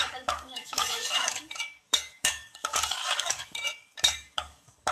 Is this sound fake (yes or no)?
yes